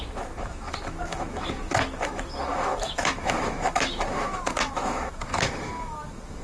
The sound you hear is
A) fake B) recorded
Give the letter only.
A